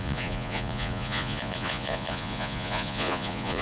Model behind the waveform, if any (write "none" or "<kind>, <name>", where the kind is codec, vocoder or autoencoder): vocoder, Vocos